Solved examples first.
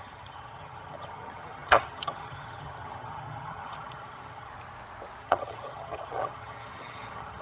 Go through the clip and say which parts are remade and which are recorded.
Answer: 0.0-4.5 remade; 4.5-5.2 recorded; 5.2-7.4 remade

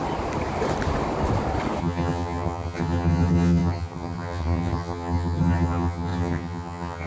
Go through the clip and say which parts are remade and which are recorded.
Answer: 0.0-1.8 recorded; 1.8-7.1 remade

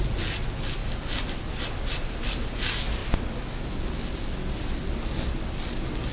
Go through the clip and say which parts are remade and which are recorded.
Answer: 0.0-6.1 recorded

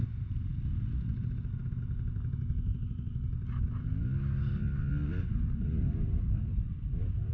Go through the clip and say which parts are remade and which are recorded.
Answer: 0.0-7.3 recorded

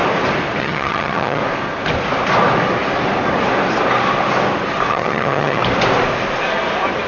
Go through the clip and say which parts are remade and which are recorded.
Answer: 0.0-0.6 recorded; 0.6-1.4 remade; 1.4-4.9 recorded; 4.9-5.6 remade; 5.6-7.1 recorded

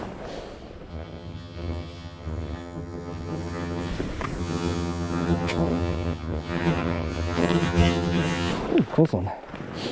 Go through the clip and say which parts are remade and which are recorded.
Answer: 0.0-0.9 recorded; 0.9-3.9 remade; 3.9-4.4 recorded; 4.4-8.5 remade; 8.5-9.9 recorded